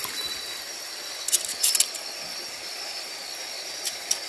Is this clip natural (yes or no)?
yes